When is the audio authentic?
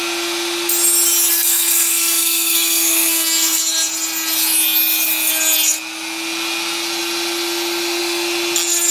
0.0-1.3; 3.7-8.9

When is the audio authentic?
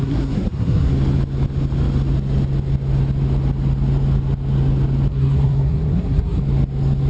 0.9-5.1; 6.4-7.1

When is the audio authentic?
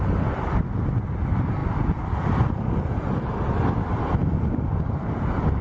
0.0-5.6